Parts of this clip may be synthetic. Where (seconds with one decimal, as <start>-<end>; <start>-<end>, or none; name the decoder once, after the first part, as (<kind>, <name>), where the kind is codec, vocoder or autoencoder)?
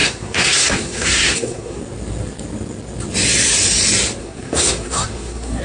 0.0-1.8 (codec, SNAC); 4.2-5.6